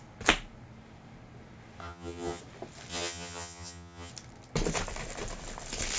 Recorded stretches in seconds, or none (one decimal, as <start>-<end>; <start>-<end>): 0.0-1.8; 2.4-2.9; 4.1-6.0

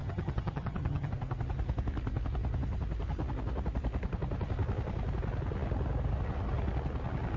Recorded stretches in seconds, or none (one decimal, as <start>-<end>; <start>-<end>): 1.1-7.4

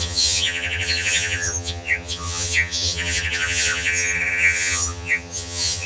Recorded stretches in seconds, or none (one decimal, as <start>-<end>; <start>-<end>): none

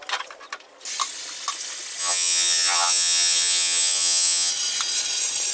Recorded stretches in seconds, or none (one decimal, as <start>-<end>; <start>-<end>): 0.0-2.0; 4.5-5.5

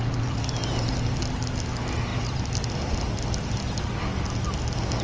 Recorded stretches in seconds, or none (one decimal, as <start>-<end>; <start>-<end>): 0.0-5.0

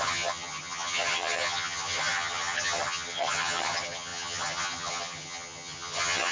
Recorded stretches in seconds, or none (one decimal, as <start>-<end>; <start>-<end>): none

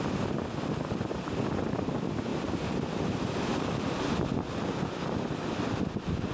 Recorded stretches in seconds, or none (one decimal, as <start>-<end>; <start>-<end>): 0.0-6.3

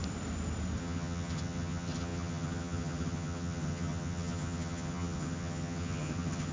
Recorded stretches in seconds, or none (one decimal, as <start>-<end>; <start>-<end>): 0.0-0.8